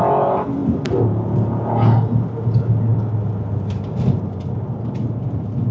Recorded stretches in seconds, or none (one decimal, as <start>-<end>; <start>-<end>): 0.0-0.6; 1.2-5.7